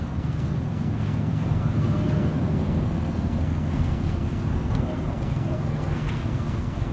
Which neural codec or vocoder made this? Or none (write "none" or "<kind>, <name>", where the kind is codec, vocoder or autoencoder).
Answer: codec, SNAC